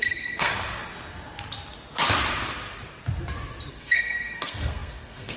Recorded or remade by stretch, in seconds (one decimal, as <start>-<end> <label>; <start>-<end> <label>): 0.0-0.5 remade; 0.5-3.7 recorded; 3.7-5.4 remade